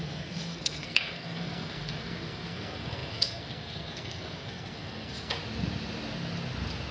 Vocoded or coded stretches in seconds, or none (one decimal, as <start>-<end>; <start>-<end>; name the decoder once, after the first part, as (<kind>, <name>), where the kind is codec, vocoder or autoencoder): 0.0-5.4 (codec, SNAC)